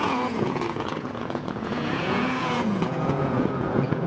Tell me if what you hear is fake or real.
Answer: fake